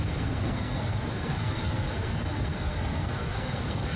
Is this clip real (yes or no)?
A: no